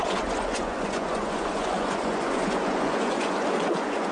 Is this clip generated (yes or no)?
yes